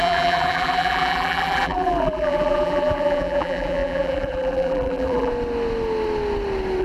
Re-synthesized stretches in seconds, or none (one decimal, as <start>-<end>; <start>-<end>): 0.0-5.3